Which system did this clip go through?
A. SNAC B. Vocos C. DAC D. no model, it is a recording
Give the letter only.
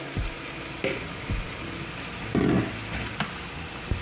D